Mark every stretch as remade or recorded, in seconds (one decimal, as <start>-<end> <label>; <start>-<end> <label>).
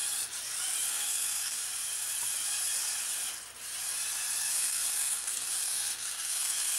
0.0-0.9 recorded; 0.9-1.6 remade; 1.6-4.4 recorded; 4.4-6.8 remade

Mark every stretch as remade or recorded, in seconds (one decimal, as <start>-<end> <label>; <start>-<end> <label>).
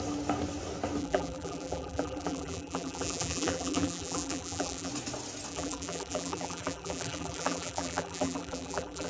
0.0-1.0 recorded; 1.0-4.9 remade; 4.9-5.5 recorded; 5.5-9.1 remade